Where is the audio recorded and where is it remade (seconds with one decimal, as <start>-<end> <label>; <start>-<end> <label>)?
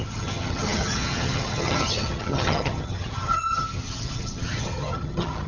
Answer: 0.0-5.5 remade